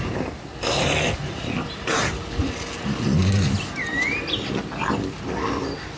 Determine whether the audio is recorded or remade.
recorded